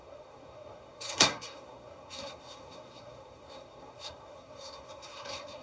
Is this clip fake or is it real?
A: fake